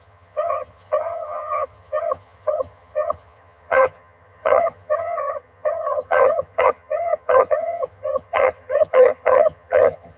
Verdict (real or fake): fake